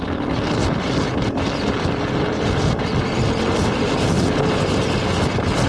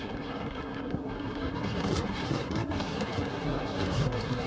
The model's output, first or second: second